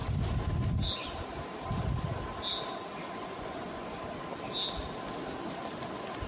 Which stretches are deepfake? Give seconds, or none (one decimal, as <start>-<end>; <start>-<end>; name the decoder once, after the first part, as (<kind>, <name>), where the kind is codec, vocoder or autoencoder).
3.0-4.0 (vocoder, Vocos)